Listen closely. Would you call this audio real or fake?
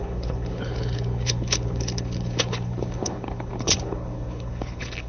fake